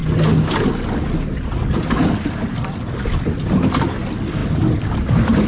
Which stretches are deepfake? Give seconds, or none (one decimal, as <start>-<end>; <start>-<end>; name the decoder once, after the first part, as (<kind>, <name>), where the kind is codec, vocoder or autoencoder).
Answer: 4.4-4.9 (vocoder, BigVGAN v2)